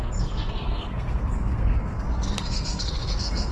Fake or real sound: fake